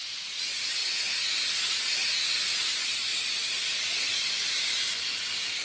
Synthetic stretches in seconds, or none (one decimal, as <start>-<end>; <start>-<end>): none